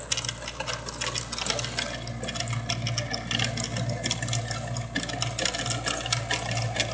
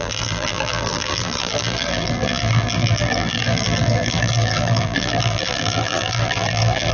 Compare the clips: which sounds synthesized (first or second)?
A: second